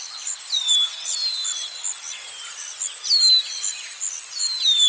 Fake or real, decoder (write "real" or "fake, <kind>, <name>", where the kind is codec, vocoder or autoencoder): real